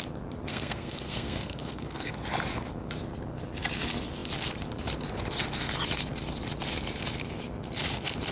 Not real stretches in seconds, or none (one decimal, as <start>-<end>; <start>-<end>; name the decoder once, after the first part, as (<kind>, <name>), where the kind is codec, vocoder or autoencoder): 0.5-2.1 (codec, SNAC)